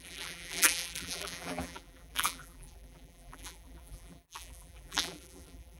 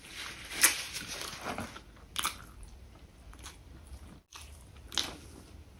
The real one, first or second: second